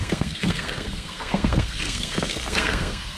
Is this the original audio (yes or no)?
no